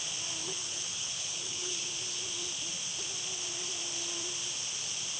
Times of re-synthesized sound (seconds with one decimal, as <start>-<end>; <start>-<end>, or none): 0.4-1.9